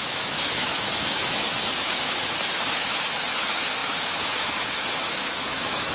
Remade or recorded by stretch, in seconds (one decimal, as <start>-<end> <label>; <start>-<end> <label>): 0.0-5.9 remade